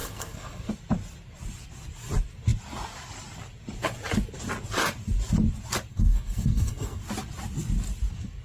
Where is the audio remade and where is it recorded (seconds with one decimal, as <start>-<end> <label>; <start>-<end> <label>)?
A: 0.0-0.7 remade; 0.7-5.9 recorded; 5.9-7.0 remade; 7.0-8.4 recorded